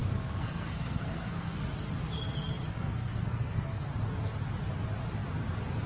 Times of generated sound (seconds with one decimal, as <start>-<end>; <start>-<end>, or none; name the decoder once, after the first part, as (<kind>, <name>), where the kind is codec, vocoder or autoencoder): 0.0-1.6 (codec, SNAC); 2.7-3.9